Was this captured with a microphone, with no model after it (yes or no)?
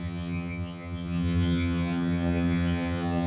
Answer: no